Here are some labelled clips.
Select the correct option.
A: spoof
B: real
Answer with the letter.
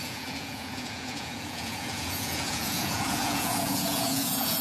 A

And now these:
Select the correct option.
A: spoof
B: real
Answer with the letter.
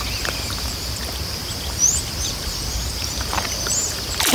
B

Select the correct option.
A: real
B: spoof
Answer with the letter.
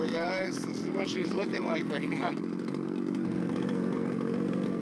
B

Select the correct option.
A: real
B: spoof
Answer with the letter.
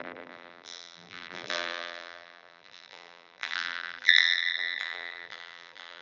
B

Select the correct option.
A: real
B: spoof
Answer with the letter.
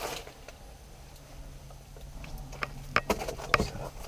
A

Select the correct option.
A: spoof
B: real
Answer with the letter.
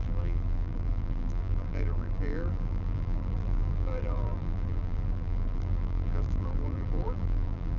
A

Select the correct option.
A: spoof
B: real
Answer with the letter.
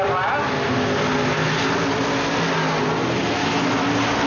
B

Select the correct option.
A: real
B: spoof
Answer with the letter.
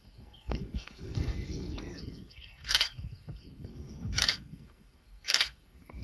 B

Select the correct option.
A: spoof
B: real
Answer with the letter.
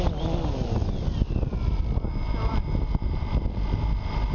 B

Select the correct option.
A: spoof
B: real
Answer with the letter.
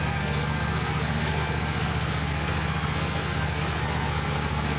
A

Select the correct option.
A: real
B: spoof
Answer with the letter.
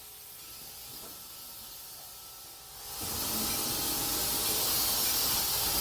A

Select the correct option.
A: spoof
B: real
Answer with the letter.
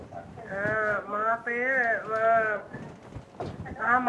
B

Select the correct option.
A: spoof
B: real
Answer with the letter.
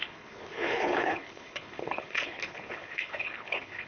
A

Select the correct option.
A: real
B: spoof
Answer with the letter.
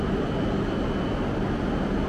A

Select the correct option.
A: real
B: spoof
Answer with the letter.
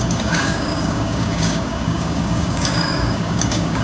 B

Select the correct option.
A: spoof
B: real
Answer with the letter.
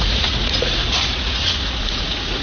A